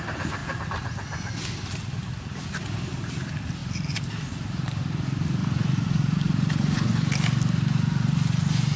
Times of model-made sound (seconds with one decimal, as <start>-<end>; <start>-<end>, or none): 5.4-6.9